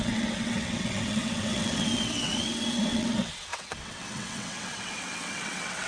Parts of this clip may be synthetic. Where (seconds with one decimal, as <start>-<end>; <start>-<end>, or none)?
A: 0.0-5.9